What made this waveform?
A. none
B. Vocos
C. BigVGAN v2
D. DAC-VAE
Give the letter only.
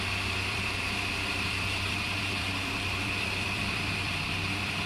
C